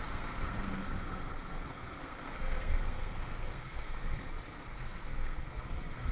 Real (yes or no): no